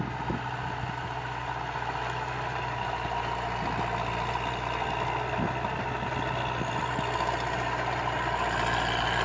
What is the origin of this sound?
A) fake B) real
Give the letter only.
B